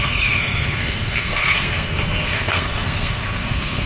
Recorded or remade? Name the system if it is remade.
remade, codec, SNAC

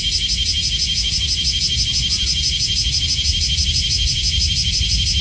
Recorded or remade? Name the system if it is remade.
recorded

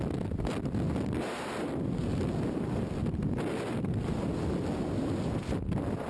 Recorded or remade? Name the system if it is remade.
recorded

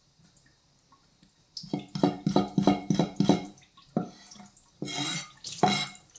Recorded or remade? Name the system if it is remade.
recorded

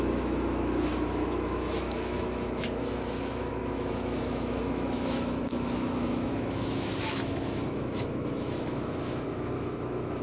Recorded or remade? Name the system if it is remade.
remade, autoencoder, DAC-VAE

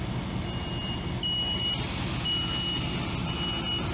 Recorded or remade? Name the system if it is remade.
recorded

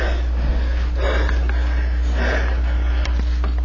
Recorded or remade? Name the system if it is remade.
recorded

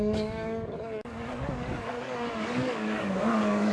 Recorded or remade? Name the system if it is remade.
remade, codec, DAC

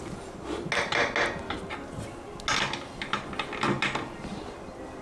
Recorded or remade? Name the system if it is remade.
recorded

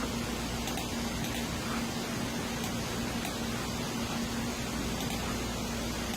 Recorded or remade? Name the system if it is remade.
recorded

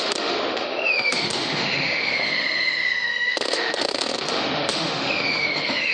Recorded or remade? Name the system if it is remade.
remade, autoencoder, DAC-VAE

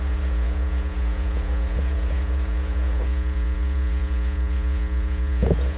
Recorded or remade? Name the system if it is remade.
remade, vocoder, Vocos